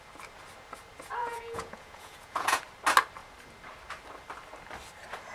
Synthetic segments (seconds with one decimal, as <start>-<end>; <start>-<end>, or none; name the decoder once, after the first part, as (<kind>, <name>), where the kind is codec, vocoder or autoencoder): 1.2-2.6 (vocoder, Vocos)